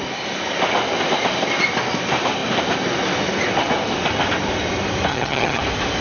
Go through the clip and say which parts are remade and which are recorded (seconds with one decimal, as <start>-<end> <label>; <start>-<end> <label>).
0.0-5.1 recorded; 5.1-5.6 remade; 5.6-6.0 recorded